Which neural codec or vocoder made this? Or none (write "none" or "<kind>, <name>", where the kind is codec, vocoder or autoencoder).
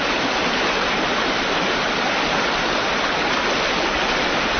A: none